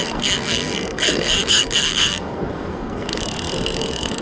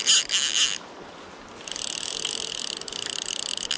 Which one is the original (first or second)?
second